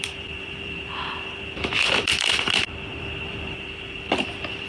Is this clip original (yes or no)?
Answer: no